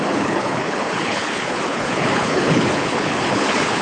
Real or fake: fake